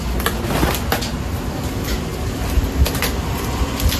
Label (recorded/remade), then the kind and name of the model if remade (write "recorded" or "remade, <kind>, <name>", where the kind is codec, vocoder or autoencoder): recorded